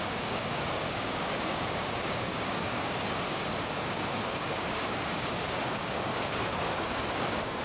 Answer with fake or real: fake